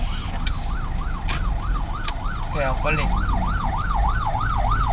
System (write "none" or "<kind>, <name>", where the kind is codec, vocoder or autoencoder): none